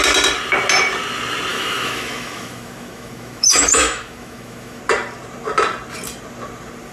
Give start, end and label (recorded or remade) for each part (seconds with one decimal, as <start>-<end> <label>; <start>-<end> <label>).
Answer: 0.0-1.5 recorded; 1.5-4.8 remade; 4.8-6.9 recorded